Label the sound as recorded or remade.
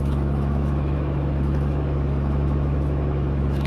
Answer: remade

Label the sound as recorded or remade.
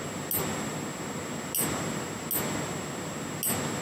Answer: recorded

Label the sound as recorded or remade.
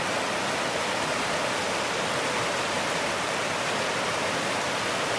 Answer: recorded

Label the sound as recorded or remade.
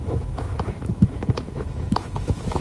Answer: remade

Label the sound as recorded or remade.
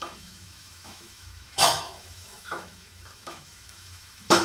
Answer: remade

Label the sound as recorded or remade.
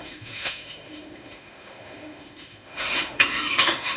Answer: remade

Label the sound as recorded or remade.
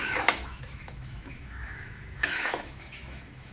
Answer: remade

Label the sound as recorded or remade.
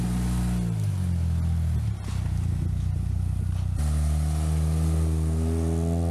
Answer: recorded